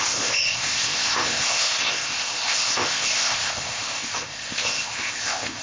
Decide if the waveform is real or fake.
fake